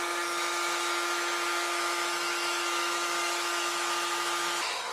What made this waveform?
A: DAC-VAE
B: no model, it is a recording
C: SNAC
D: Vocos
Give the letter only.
A